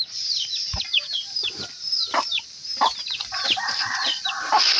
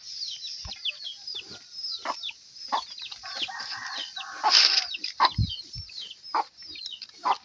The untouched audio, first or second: second